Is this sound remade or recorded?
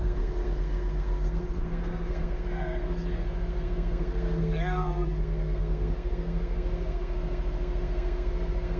remade